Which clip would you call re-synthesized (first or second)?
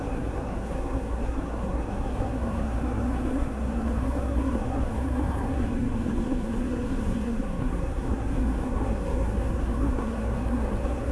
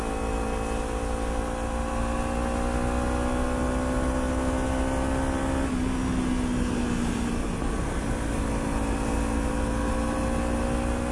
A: first